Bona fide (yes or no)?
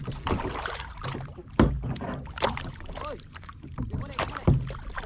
no